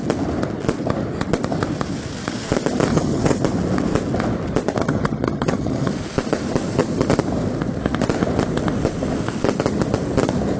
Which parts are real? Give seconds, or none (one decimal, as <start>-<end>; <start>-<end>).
0.0-2.9; 3.4-4.8; 5.9-10.6